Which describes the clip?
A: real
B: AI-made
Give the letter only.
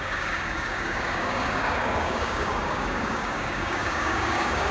B